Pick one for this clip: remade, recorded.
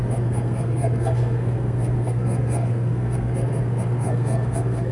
remade